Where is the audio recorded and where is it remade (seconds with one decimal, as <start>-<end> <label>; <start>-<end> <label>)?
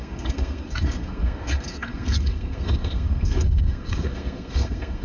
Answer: 0.0-5.0 remade